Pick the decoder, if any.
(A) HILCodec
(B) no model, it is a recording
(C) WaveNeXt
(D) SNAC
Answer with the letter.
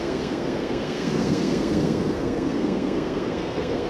D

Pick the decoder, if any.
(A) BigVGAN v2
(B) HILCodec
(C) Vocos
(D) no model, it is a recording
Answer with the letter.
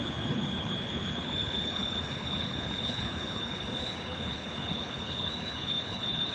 B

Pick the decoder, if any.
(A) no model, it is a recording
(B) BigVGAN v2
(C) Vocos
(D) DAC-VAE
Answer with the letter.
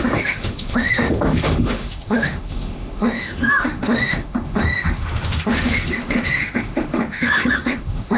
D